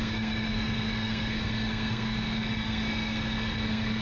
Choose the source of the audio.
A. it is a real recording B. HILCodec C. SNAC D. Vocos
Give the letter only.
C